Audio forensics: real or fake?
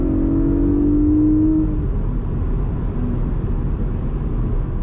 real